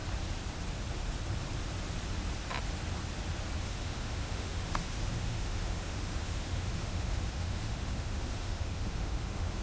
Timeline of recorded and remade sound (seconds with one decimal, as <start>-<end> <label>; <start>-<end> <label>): 0.0-3.6 recorded; 3.6-9.6 remade